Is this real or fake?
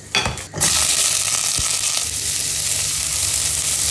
real